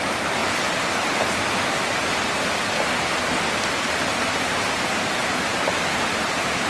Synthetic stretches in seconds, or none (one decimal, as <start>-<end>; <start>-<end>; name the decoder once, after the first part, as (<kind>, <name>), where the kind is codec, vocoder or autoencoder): 0.0-0.4 (vocoder, BigVGAN v2); 4.4-6.7